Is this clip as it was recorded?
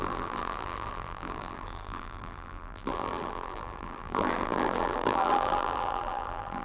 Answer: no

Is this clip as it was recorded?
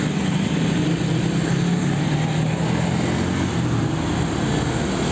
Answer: yes